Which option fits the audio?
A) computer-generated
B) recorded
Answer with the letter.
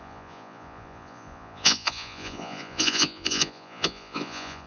A